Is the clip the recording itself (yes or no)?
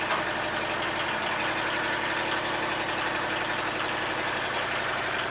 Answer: yes